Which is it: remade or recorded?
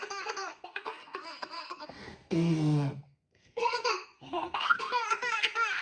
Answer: remade